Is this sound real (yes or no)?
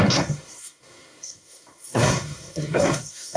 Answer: no